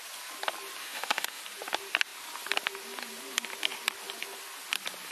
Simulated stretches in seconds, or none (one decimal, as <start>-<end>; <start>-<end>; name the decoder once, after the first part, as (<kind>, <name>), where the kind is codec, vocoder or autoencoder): 0.8-1.4 (autoencoder, DAC-VAE)

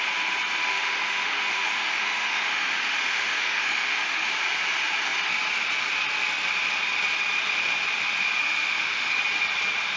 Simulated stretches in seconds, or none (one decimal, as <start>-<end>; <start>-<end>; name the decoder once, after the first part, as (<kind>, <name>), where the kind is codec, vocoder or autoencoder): 0.7-4.3 (autoencoder, DAC-VAE); 8.4-9.1

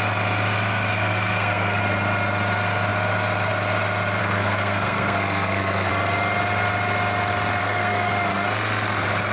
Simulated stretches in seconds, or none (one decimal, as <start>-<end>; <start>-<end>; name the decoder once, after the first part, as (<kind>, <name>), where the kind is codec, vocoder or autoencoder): 0.9-1.8 (codec, SNAC); 4.2-5.9; 7.6-8.1

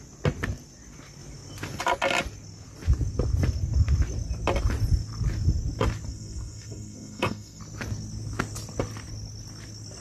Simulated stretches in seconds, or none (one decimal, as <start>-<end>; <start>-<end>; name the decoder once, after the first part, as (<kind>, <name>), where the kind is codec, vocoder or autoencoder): 6.1-7.6 (codec, SNAC)

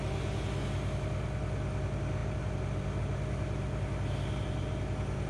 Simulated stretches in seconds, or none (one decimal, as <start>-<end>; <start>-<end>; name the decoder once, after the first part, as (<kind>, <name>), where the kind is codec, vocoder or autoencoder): none

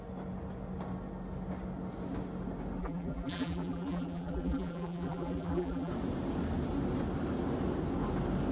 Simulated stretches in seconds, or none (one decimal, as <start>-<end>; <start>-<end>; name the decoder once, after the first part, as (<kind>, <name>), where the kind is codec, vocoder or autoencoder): 2.8-5.9 (vocoder, BigVGAN v2)

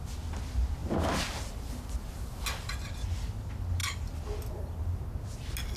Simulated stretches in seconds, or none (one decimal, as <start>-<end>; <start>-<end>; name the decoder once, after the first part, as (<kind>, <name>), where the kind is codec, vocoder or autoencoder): none